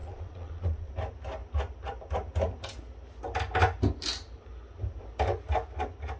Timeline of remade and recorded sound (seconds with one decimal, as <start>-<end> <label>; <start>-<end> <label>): 0.0-0.9 remade; 0.9-6.2 recorded